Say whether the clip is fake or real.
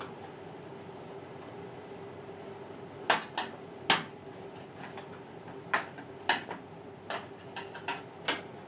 real